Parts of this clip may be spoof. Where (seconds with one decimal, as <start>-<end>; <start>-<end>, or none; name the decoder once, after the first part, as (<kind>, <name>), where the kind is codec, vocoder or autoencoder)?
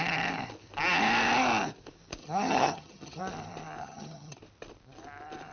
2.2-3.2 (vocoder, HiFi-GAN); 3.8-4.4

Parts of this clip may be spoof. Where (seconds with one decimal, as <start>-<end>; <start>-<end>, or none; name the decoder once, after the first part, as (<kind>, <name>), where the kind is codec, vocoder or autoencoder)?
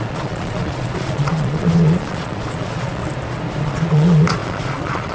0.0-3.0 (vocoder, Vocos); 3.6-5.1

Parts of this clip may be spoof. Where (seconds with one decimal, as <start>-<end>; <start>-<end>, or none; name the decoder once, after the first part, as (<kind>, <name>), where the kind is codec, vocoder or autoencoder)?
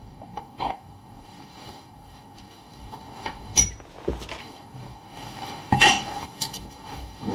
0.0-3.6 (codec, DAC); 4.4-7.3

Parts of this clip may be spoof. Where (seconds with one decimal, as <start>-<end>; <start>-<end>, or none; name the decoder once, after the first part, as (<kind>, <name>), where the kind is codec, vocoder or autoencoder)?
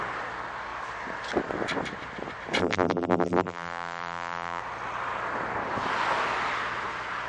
2.6-4.6 (vocoder, BigVGAN v2)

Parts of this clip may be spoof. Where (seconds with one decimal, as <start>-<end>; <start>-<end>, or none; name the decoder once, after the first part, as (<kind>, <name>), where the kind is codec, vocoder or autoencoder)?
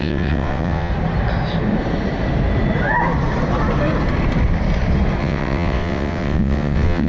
0.0-0.9 (vocoder, WaveNeXt); 5.2-7.1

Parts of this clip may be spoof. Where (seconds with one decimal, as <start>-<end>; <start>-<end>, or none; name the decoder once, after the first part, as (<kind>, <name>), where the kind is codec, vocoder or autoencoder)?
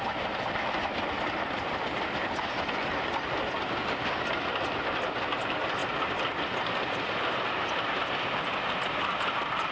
none